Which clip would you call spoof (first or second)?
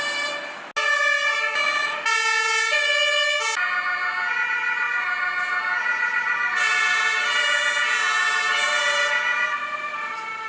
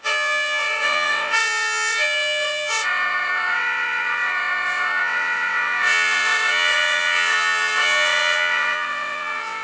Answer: second